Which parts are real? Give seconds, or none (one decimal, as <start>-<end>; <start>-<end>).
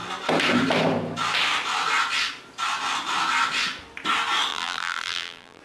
0.0-4.5